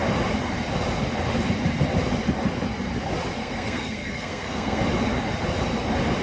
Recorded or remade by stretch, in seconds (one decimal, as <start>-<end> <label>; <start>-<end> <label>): 0.0-3.4 recorded; 3.4-4.8 remade; 4.8-6.2 recorded